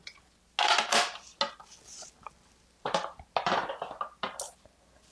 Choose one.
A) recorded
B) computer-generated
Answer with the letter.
A